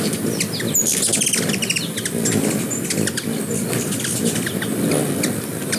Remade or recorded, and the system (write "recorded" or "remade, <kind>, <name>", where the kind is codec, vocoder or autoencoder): recorded